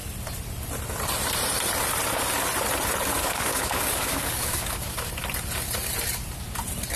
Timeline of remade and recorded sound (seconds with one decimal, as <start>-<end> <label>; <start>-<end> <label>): 0.0-3.2 recorded; 3.2-5.1 remade; 5.1-7.0 recorded